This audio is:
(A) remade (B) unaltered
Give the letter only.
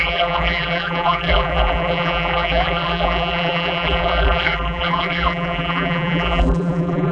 A